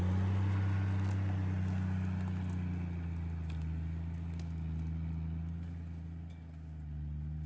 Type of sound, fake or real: real